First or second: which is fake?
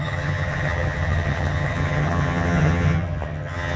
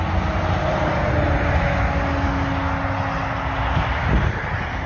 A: first